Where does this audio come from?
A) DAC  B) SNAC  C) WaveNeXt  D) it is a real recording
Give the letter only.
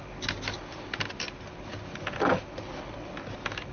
D